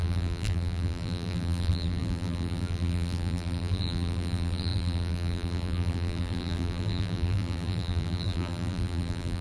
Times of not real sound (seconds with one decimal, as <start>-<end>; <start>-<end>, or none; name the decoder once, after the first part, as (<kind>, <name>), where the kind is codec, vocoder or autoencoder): 0.0-9.4 (vocoder, BigVGAN v2)